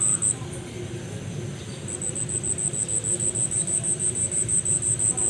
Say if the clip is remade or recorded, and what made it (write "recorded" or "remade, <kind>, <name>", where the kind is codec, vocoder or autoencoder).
recorded